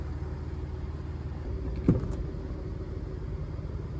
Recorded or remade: recorded